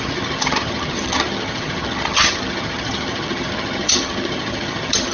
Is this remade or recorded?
remade